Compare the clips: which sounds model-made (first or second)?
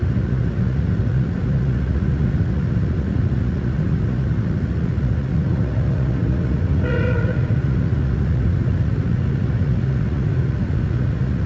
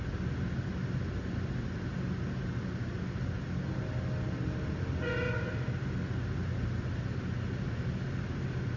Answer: first